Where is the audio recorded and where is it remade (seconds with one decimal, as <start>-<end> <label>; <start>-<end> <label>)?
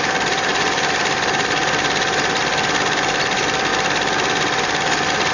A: 0.0-5.3 recorded